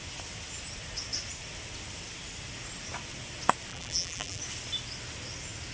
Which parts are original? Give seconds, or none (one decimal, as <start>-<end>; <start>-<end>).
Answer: 0.0-3.7; 4.4-5.7